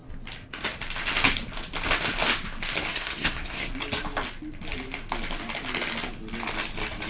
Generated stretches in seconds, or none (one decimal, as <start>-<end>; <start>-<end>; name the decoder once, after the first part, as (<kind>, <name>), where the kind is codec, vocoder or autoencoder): 2.9-3.7 (codec, SNAC)